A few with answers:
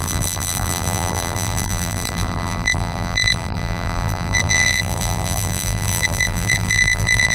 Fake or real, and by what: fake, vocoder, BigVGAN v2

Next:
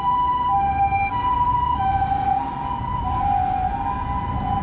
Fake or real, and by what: real